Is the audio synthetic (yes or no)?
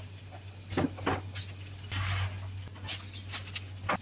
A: no